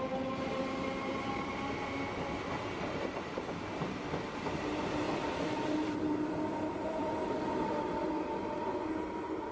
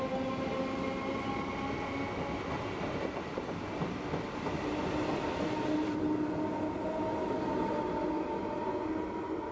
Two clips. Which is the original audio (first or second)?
second